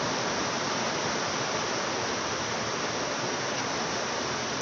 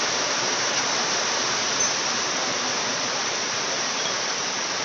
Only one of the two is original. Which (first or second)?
first